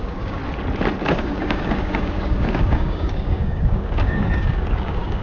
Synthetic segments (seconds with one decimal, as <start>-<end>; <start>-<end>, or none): 0.0-0.4; 1.2-5.2